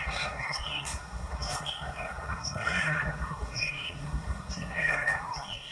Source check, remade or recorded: remade